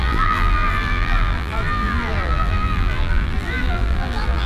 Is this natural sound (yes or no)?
no